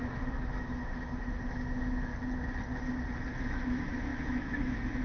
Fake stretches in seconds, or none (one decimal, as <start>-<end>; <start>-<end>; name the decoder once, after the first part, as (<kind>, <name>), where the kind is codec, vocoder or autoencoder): 0.0-2.1 (autoencoder, DAC-VAE); 3.3-5.0